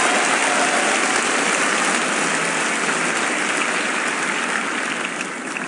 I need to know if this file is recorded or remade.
recorded